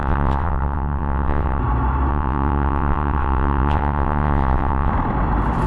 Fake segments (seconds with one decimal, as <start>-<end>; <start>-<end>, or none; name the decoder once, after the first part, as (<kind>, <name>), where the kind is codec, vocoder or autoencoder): 0.0-1.6 (vocoder, WaveNeXt); 2.1-4.9